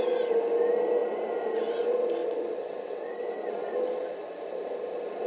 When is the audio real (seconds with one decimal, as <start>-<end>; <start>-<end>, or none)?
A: 0.0-2.2; 3.7-5.3